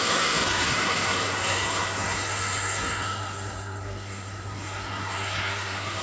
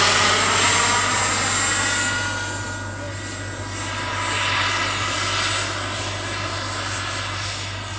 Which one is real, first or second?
second